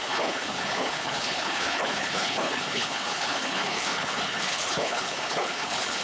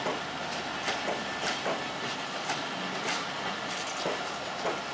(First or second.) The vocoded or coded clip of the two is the first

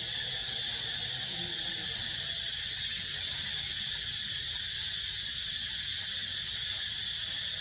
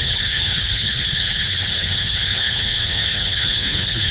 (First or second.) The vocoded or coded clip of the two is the second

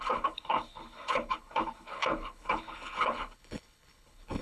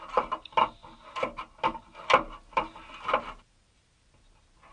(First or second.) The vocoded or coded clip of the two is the first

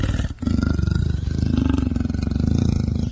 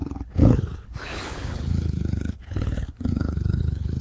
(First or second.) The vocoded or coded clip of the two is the second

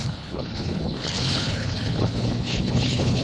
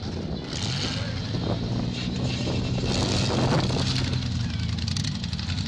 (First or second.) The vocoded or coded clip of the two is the first